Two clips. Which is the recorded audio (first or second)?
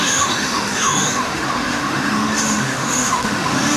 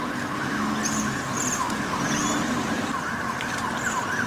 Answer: second